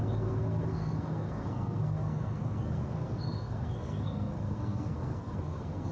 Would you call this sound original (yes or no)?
no